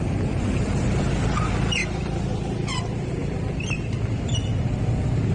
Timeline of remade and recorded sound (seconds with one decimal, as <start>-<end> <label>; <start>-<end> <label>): 0.0-1.8 recorded; 1.8-5.3 remade